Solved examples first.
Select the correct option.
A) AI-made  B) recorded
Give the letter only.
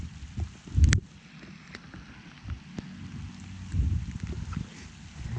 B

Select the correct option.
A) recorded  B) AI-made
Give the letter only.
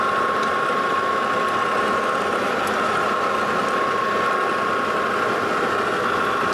A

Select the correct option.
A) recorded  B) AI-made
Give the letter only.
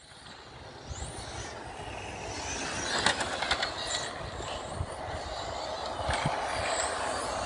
A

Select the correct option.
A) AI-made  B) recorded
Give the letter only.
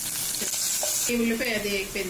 B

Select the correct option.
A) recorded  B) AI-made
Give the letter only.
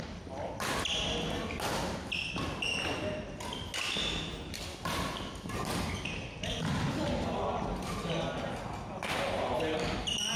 A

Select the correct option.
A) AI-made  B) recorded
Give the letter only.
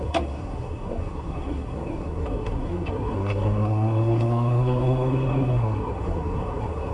A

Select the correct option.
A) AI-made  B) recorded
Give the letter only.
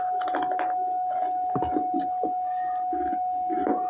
B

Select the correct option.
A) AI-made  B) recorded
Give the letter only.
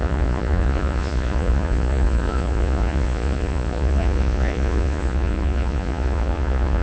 A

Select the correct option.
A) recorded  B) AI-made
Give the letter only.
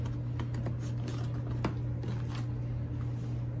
A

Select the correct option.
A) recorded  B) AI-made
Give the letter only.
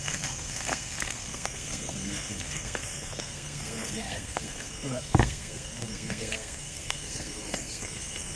B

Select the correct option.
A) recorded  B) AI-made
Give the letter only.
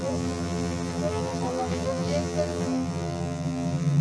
B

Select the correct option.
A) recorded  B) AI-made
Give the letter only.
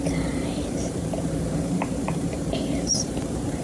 B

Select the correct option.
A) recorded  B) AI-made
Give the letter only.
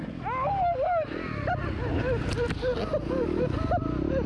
A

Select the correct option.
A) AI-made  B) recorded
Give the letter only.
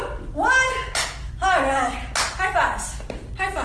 B